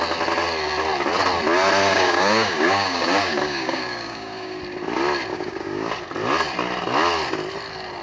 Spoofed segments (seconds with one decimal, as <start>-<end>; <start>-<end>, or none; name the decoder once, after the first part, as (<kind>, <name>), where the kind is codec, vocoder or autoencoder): 1.9-4.6 (codec, DAC); 5.3-5.9

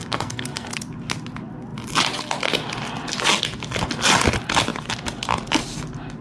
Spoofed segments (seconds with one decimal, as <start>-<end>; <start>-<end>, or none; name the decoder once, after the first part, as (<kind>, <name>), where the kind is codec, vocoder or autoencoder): 0.0-0.7 (codec, SNAC)

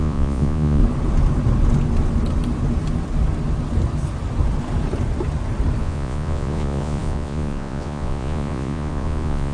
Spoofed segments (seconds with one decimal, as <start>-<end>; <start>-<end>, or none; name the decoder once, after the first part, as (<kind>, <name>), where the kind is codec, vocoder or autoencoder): 0.0-0.8 (vocoder, Vocos); 5.8-9.5

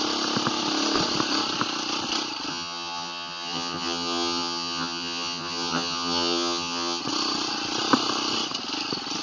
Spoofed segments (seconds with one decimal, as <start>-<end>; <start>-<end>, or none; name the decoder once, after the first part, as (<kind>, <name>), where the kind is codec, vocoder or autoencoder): 2.5-7.0 (vocoder, HiFi-GAN)